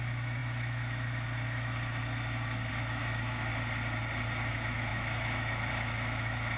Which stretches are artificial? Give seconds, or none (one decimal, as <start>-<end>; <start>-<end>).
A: 0.0-3.5; 4.5-6.6